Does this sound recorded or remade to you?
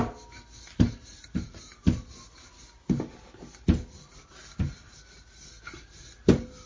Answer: recorded